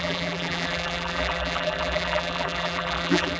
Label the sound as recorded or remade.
remade